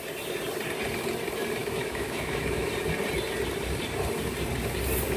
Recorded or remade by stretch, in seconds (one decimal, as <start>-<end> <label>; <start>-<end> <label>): 0.0-1.6 recorded; 1.6-2.7 remade; 2.7-5.2 recorded